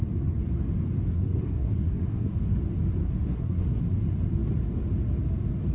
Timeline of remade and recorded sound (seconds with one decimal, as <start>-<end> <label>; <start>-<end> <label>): 0.0-1.1 recorded; 1.1-2.3 remade; 2.3-3.0 recorded; 3.0-3.8 remade; 3.8-5.7 recorded